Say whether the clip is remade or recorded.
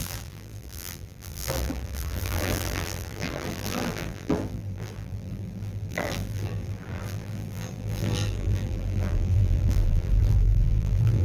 remade